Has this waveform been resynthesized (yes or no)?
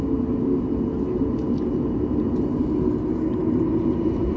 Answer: no